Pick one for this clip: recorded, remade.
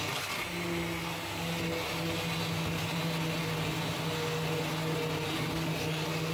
recorded